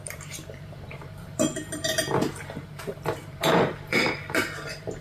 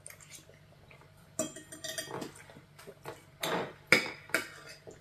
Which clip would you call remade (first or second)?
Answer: first